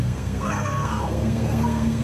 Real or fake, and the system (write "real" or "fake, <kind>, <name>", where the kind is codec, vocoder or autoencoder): fake, codec, SNAC